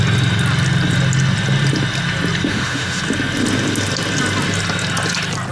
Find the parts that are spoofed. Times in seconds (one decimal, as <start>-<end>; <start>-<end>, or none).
2.5-3.0